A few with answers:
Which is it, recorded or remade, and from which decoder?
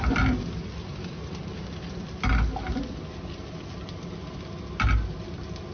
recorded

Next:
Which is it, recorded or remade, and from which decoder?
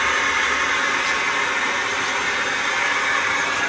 recorded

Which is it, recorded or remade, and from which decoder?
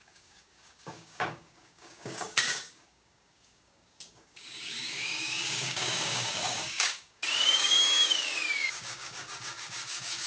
remade, codec, DAC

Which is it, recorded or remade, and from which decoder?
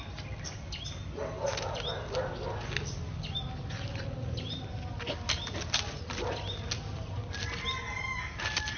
recorded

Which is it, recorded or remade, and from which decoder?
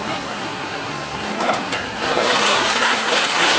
remade, codec, SNAC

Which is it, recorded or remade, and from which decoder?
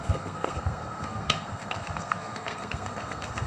remade, codec, SNAC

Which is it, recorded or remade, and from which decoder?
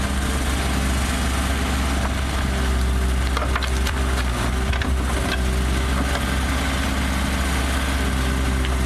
recorded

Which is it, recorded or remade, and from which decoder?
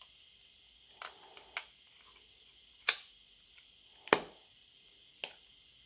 recorded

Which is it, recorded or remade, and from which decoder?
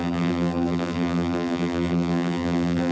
remade, vocoder, BigVGAN v2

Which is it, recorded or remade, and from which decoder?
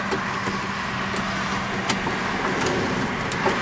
recorded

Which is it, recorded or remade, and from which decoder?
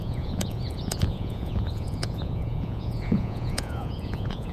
remade, vocoder, Vocos